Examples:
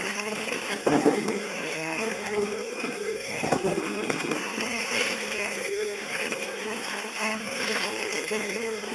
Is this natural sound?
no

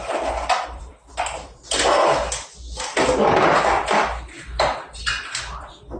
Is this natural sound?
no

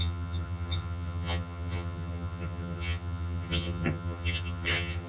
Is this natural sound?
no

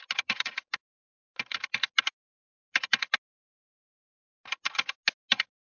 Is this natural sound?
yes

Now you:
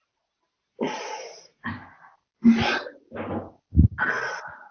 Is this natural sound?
yes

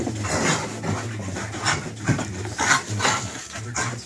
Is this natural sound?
yes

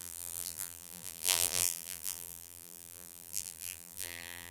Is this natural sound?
no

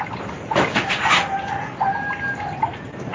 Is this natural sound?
yes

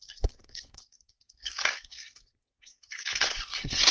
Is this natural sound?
no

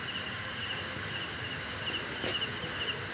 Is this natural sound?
yes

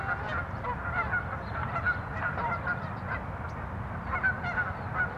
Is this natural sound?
yes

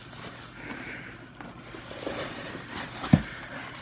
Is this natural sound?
yes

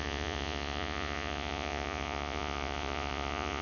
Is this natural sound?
no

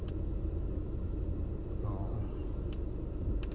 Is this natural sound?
yes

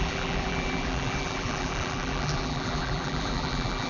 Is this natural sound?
no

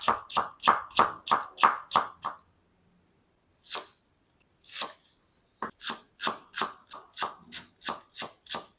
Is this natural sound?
yes